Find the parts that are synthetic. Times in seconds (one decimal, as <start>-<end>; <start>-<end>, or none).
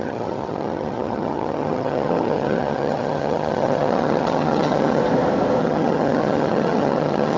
0.0-5.0; 5.6-7.4